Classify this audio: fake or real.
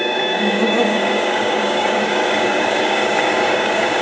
fake